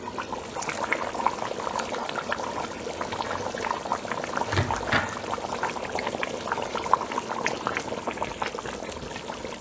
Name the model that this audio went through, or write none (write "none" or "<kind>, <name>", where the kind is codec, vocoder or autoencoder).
none